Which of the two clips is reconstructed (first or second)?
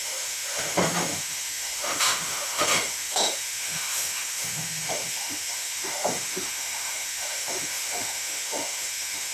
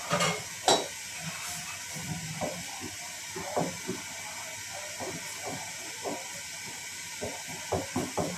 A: first